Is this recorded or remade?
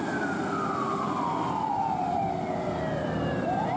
recorded